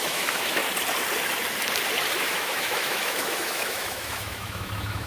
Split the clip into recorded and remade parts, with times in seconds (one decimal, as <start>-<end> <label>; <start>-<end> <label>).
0.0-0.6 remade; 0.6-2.2 recorded; 2.2-5.1 remade